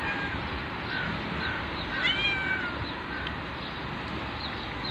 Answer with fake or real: real